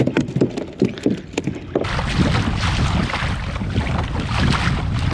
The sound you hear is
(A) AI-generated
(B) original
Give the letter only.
B